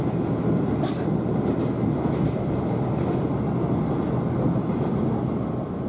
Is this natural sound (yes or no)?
yes